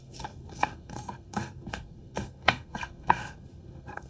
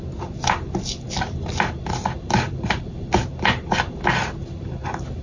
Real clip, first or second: second